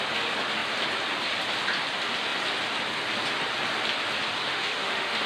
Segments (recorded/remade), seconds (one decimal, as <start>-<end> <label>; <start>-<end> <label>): 0.0-4.4 recorded; 4.4-5.3 remade